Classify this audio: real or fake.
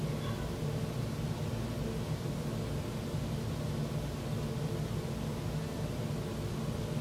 real